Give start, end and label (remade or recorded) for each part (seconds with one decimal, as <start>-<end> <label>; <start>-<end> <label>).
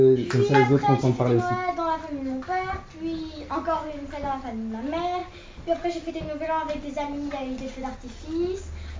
0.0-5.2 recorded; 5.2-6.1 remade; 6.1-9.0 recorded